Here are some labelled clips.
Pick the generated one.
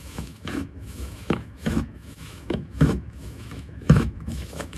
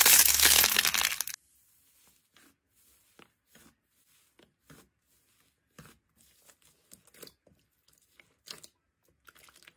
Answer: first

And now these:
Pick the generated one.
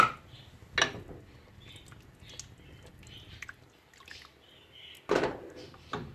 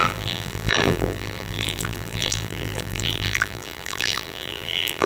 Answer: second